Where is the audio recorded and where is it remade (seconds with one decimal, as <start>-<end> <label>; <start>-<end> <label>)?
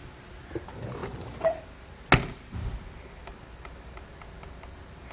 0.0-5.1 recorded